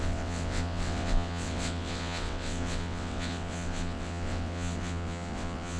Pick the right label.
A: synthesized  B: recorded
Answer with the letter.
A